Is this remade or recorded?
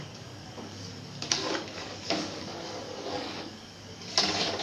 remade